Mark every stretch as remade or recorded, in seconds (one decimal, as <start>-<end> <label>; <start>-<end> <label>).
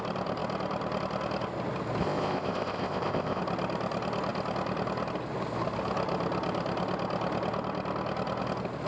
0.0-2.0 recorded; 2.0-3.4 remade; 3.4-8.9 recorded